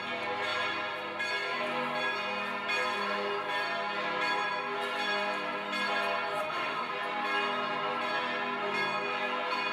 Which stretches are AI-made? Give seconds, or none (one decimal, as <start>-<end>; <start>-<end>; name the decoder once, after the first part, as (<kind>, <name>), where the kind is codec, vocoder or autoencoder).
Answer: 6.4-6.9 (autoencoder, DAC-VAE)